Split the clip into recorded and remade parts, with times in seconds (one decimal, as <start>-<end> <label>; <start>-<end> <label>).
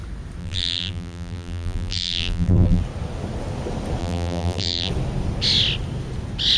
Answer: 0.0-0.4 recorded; 0.4-2.8 remade; 2.8-4.0 recorded; 4.0-4.9 remade; 4.9-6.6 recorded